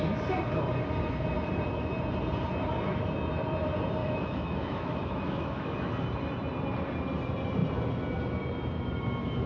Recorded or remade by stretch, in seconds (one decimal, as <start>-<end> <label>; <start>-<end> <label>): 0.0-4.0 recorded; 4.0-5.9 remade; 5.9-9.5 recorded